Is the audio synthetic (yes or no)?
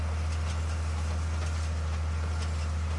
no